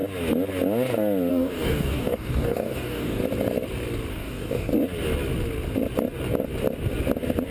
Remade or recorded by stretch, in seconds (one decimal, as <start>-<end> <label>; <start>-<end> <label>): 0.0-1.3 recorded; 1.3-3.2 remade; 3.2-4.1 recorded; 4.1-4.7 remade; 4.7-7.5 recorded

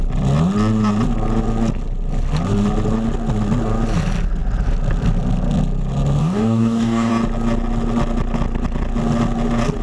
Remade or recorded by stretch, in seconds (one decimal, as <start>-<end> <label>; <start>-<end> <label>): 0.0-6.2 recorded; 6.2-7.1 remade; 7.1-9.8 recorded

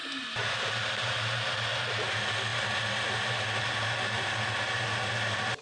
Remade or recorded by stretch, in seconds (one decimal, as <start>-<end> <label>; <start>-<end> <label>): 0.0-5.6 recorded

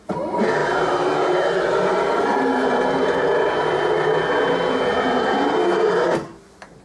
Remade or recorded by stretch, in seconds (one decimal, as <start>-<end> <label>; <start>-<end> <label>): 0.0-6.8 recorded